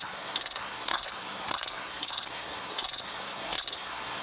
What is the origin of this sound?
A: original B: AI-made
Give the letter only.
B